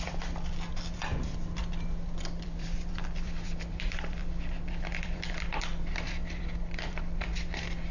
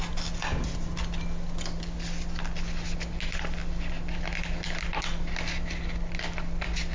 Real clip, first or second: second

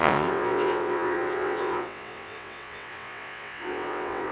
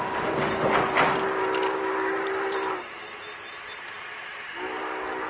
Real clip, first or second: second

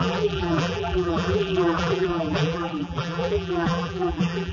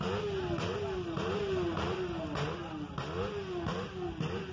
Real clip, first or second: second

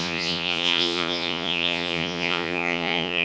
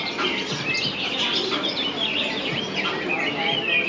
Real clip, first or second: second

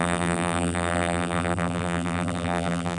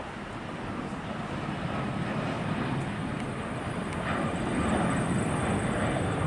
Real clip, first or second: second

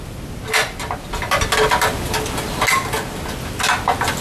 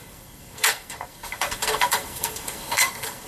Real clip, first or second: first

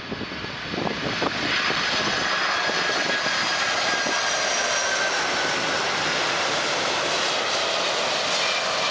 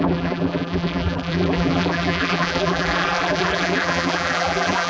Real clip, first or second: first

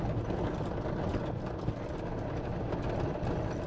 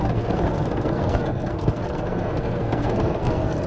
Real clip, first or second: first